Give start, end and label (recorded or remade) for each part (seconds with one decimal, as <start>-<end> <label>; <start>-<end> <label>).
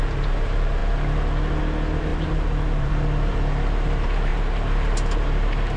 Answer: 0.0-2.1 recorded; 2.1-2.9 remade; 2.9-4.3 recorded; 4.3-4.9 remade; 4.9-5.8 recorded